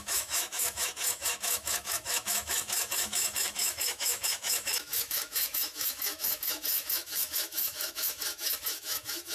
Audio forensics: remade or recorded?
remade